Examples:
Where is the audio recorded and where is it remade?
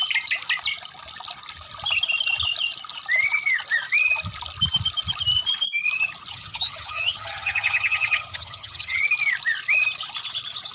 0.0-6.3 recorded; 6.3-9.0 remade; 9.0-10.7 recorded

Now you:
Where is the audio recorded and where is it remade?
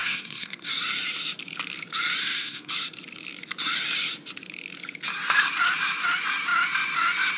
0.0-0.7 remade; 0.7-2.2 recorded; 2.2-2.7 remade; 2.7-7.4 recorded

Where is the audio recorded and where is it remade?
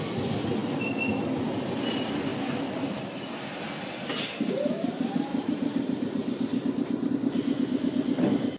0.0-5.3 recorded; 5.3-7.1 remade; 7.1-8.6 recorded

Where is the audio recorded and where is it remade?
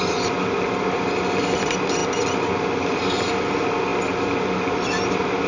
0.0-5.5 recorded